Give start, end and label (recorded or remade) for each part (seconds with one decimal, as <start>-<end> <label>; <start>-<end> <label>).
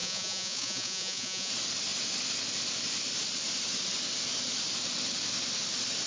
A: 0.0-1.5 remade; 1.5-6.1 recorded